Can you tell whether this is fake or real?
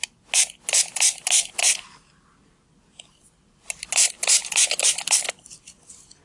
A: real